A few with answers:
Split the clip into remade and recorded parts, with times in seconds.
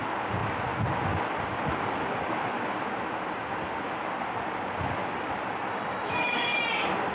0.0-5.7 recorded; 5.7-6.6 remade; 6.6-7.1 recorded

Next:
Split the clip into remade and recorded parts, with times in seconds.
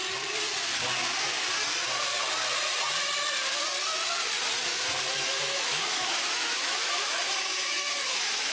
0.0-5.1 recorded; 5.1-8.5 remade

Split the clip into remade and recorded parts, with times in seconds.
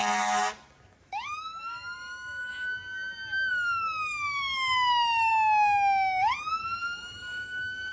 0.0-1.0 recorded; 1.0-2.5 remade; 2.5-3.5 recorded; 3.5-5.3 remade; 5.3-6.5 recorded; 6.5-7.9 remade